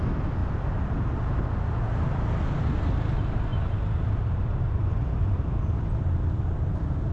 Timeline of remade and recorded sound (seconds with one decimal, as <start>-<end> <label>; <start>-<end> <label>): 0.0-0.4 recorded; 0.4-1.4 remade; 1.4-3.5 recorded; 3.5-5.4 remade; 5.4-7.1 recorded